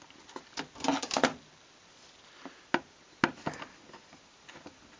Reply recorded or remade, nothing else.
recorded